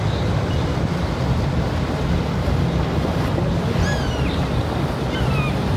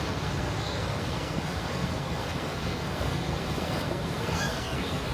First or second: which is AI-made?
second